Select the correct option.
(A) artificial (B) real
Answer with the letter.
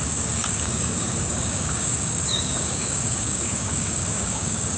A